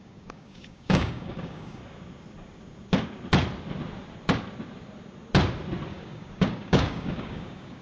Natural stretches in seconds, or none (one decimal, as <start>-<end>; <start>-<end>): 1.8-5.9